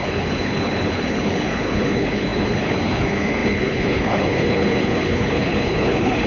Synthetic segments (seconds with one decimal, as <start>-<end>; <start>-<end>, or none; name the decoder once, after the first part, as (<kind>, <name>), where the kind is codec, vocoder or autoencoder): 0.0-6.3 (codec, HILCodec)